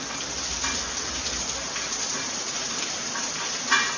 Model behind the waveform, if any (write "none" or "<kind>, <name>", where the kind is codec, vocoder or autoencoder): none